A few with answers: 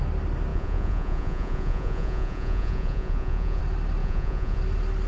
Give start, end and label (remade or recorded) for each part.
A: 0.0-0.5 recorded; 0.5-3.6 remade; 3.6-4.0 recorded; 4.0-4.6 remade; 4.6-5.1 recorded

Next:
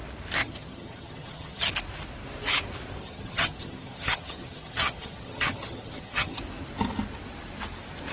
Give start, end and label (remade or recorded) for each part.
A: 0.0-0.4 recorded; 0.4-1.7 remade; 1.7-3.0 recorded; 3.0-6.4 remade; 6.4-8.1 recorded

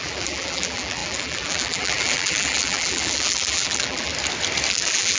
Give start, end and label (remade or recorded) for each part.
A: 0.0-4.1 remade; 4.1-4.7 recorded; 4.7-5.2 remade

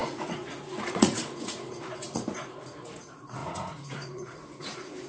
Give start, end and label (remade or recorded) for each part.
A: 0.0-5.1 remade